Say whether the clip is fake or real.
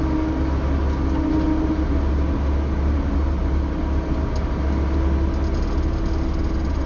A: real